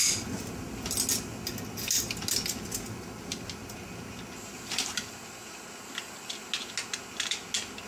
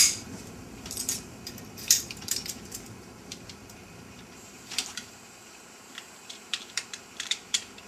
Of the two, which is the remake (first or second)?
second